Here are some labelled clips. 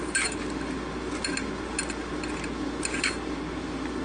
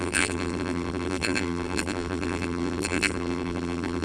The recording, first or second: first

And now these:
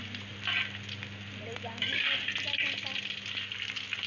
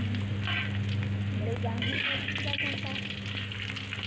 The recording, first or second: second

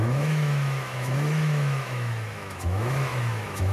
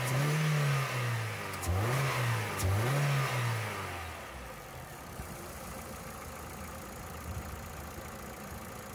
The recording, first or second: second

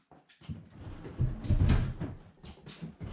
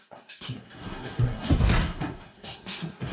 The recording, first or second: first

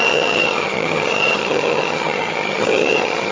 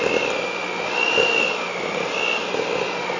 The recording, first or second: second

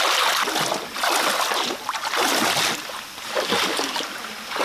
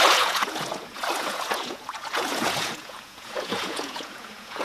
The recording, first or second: first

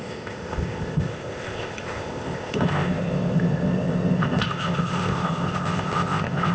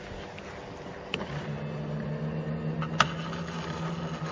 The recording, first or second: second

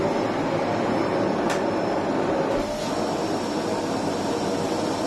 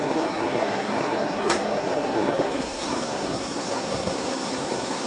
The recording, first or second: first